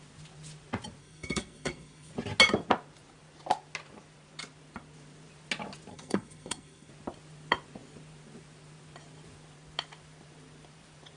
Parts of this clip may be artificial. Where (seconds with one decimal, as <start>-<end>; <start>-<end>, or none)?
1.0-2.1; 5.9-6.9